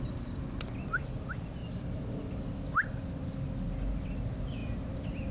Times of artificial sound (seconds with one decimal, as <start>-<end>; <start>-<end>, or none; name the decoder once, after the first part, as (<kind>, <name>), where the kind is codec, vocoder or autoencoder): none